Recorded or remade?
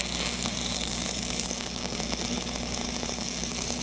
remade